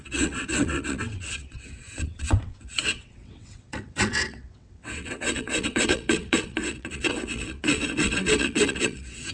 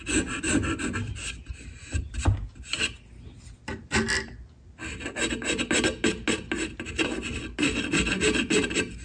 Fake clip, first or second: first